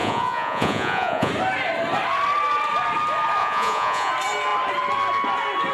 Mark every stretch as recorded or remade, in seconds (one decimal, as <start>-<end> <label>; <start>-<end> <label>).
0.0-1.3 remade; 1.3-3.4 recorded; 3.4-4.1 remade; 4.1-5.7 recorded